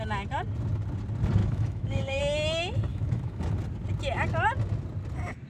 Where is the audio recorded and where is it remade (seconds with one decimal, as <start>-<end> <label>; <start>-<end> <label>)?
0.0-1.4 recorded; 1.4-2.2 remade; 2.2-2.9 recorded; 2.9-3.4 remade; 3.4-5.5 recorded

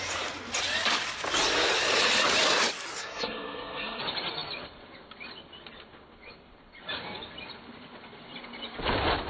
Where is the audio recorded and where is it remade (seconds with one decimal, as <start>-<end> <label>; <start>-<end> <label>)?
0.0-2.9 recorded; 2.9-4.0 remade; 4.0-9.3 recorded

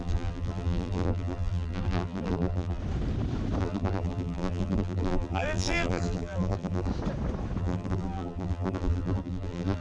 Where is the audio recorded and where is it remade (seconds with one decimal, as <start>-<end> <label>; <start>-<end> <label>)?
0.0-2.8 remade; 2.8-3.6 recorded; 3.6-6.9 remade; 6.9-7.6 recorded; 7.6-9.8 remade

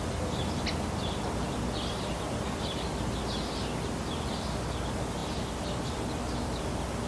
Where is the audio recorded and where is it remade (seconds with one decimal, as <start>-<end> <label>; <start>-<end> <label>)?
0.0-7.1 recorded

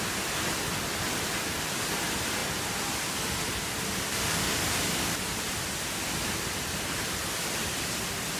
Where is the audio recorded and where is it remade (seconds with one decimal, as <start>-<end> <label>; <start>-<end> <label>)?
0.0-8.4 recorded